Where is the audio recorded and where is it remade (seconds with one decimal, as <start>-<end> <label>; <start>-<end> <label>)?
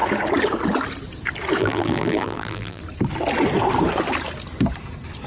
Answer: 0.0-1.6 recorded; 1.6-2.8 remade; 2.8-5.3 recorded